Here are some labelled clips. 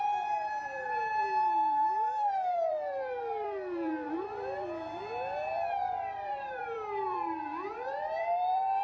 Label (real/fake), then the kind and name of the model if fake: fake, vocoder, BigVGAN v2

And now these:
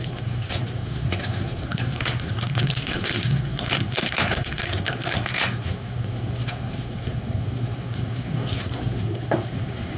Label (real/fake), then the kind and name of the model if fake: fake, codec, SNAC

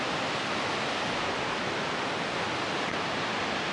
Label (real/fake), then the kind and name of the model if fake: real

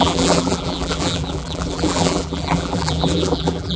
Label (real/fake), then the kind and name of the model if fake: fake, vocoder, BigVGAN v2